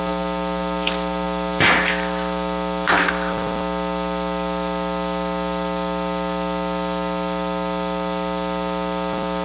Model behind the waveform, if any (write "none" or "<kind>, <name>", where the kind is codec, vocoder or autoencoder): none